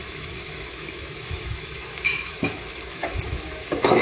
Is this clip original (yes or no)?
no